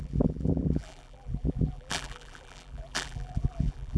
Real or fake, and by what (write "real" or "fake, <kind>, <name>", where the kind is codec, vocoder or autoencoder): fake, vocoder, BigVGAN v2